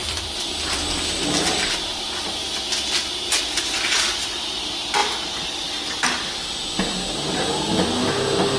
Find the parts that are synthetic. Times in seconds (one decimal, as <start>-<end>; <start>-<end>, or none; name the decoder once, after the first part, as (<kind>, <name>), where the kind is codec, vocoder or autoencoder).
0.0-1.0 (vocoder, BigVGAN v2)